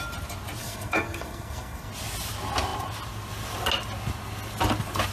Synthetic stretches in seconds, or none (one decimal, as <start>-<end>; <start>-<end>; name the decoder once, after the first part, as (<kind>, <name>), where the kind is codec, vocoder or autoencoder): 0.6-1.9 (codec, SNAC)